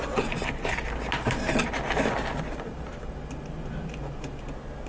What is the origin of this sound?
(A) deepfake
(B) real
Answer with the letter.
B